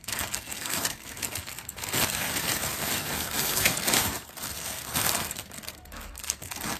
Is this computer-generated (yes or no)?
yes